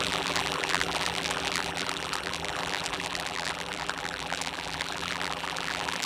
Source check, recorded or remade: remade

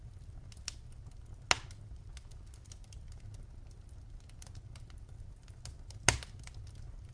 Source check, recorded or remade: recorded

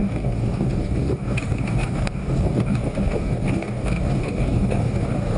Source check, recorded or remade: remade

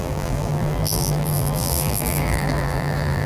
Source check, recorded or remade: remade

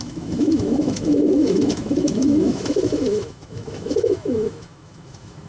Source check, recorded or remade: remade